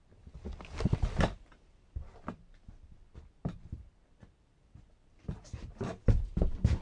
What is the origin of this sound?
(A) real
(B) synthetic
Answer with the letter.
B